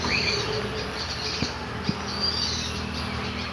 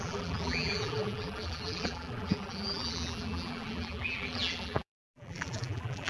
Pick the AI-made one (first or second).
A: second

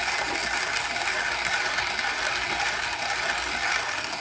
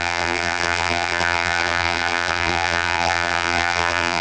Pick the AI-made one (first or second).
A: second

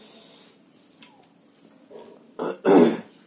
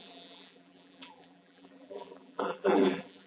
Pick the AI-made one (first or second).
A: second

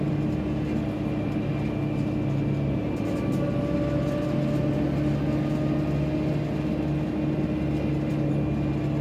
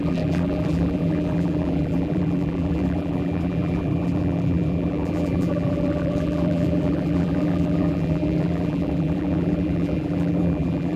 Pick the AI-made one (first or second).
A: second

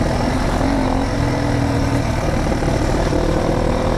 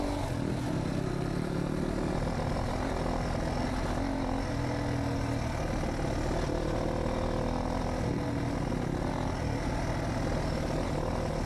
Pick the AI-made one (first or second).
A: first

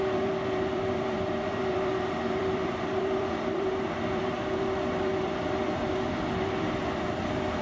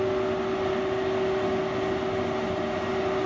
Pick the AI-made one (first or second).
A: first